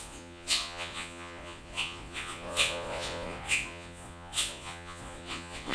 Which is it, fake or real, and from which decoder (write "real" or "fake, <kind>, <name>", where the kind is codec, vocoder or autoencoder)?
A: fake, vocoder, Vocos